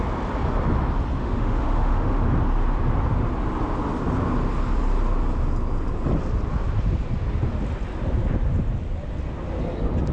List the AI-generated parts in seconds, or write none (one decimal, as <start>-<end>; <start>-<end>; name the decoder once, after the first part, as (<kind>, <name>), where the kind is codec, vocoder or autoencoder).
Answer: 1.2-2.2 (autoencoder, DAC-VAE)